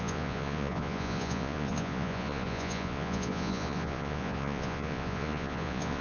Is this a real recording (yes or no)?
no